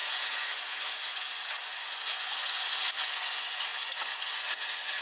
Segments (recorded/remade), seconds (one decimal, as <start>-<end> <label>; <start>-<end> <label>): 0.0-5.0 remade